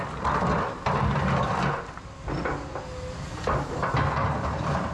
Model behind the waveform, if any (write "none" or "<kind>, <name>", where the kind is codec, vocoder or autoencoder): none